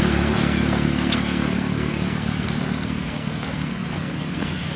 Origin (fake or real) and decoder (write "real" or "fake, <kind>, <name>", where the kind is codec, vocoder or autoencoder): fake, codec, SNAC